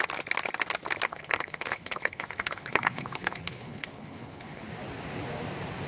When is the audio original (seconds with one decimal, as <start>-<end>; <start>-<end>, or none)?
0.0-1.1; 4.6-5.9